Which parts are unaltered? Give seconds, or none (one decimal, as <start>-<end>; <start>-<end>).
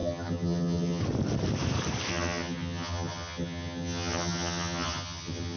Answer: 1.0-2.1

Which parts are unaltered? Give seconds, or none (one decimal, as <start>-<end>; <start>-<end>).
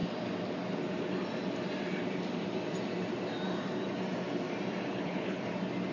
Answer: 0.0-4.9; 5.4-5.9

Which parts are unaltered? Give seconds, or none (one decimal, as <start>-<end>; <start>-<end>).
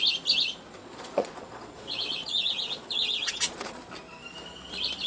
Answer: 0.0-0.8; 3.9-5.1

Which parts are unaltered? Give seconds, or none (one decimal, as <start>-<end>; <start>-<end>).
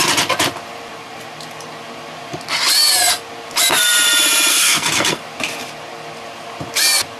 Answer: 0.0-4.5; 5.2-7.2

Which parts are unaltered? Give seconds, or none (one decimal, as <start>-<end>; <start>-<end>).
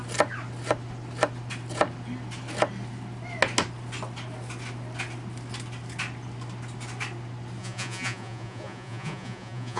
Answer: 0.0-7.6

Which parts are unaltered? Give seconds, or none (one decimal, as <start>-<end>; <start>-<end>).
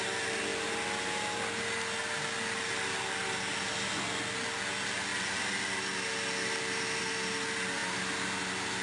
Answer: 0.0-8.8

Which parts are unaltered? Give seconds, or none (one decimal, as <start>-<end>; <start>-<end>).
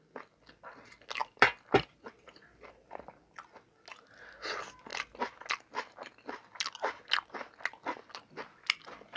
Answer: 0.0-1.2; 2.9-9.2